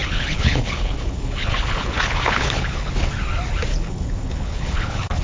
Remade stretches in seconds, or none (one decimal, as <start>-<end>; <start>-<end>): 0.0-2.9; 3.7-5.2